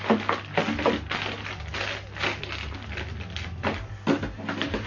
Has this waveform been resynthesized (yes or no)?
no